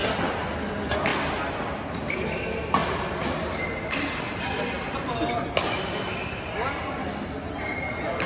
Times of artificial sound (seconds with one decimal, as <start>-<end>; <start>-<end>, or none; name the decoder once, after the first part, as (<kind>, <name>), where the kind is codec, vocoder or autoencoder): none